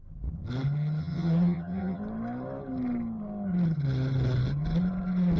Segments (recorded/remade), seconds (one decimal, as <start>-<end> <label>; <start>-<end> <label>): 0.0-1.0 recorded; 1.0-2.0 remade; 2.0-5.4 recorded